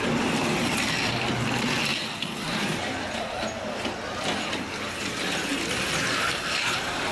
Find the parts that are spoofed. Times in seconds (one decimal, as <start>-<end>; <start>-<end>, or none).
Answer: 0.0-1.9; 3.3-5.5; 6.0-7.1